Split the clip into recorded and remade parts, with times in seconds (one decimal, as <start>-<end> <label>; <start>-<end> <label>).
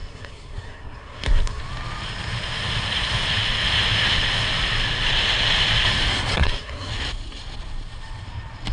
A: 0.0-1.6 remade; 1.6-6.3 recorded; 6.3-6.9 remade; 6.9-8.7 recorded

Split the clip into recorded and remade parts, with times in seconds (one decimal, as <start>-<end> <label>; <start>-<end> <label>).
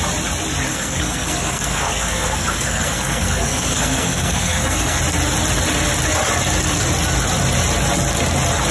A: 0.0-0.7 recorded; 0.7-5.0 remade; 5.0-8.7 recorded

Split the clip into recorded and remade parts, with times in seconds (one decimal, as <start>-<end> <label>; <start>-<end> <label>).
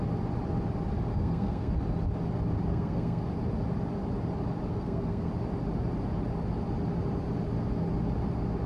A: 0.0-1.1 recorded; 1.1-1.7 remade; 1.7-2.7 recorded; 2.7-3.2 remade; 3.2-4.7 recorded; 4.7-5.3 remade; 5.3-8.7 recorded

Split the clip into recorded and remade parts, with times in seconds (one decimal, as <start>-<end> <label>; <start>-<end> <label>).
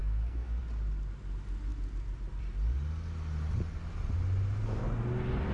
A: 0.0-0.6 remade; 0.6-5.5 recorded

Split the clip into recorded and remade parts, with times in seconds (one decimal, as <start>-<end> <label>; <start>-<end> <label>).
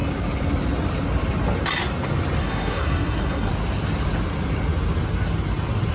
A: 0.0-2.4 recorded; 2.4-3.5 remade; 3.5-5.9 recorded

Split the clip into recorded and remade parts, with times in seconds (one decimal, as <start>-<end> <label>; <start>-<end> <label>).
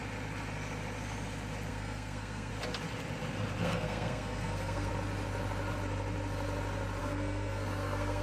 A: 0.0-1.7 recorded; 1.7-2.5 remade; 2.5-3.6 recorded; 3.6-4.9 remade; 4.9-7.0 recorded; 7.0-8.2 remade